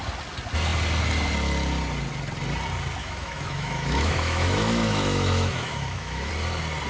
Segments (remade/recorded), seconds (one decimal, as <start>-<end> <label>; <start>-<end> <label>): 0.0-3.0 recorded; 3.0-6.3 remade; 6.3-6.9 recorded